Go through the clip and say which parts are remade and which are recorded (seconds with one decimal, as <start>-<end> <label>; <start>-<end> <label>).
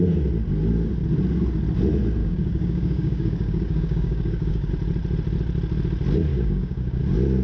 0.0-2.2 recorded; 2.2-4.7 remade; 4.7-6.3 recorded; 6.3-7.0 remade; 7.0-7.4 recorded